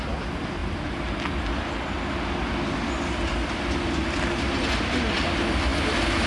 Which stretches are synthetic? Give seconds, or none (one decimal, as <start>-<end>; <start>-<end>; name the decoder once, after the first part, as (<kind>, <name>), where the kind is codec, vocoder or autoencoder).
none